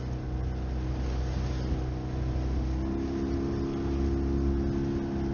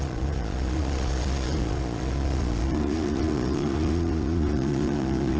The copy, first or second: second